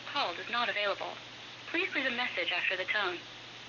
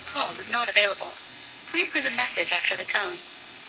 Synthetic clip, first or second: second